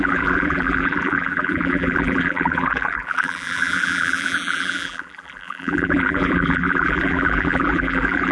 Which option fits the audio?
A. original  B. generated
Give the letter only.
B